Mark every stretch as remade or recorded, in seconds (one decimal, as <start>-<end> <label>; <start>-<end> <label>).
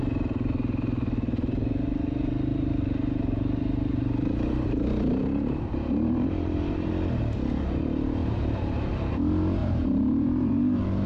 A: 0.0-2.5 recorded; 2.5-6.9 remade; 6.9-8.2 recorded; 8.2-9.1 remade; 9.1-9.6 recorded; 9.6-11.1 remade